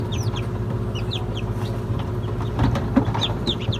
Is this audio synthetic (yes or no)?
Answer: no